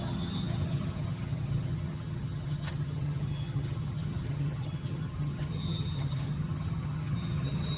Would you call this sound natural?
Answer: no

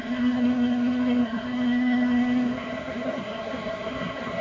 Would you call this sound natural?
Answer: no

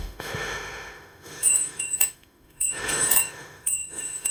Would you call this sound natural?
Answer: no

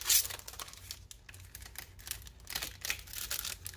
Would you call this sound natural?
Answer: yes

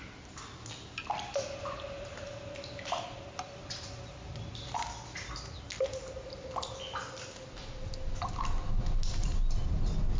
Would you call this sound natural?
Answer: yes